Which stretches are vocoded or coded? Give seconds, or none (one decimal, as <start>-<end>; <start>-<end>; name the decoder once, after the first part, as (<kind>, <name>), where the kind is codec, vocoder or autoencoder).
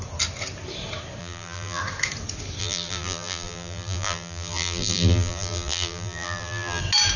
1.2-1.8 (vocoder, BigVGAN v2); 2.6-6.8